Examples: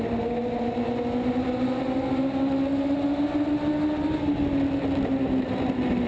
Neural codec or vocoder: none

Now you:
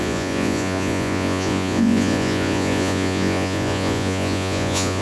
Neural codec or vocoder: vocoder, Vocos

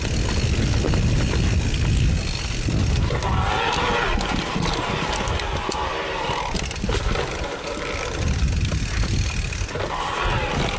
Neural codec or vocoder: none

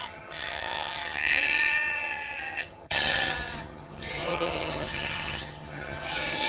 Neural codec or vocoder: vocoder, HiFi-GAN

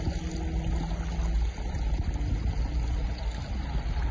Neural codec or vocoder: none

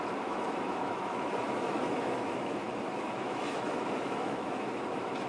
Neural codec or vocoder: autoencoder, DAC-VAE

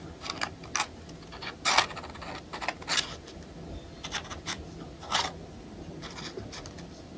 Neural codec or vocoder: none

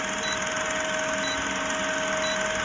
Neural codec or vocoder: none